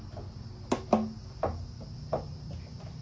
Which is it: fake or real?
real